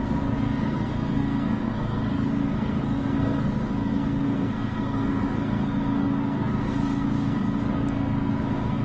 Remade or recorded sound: remade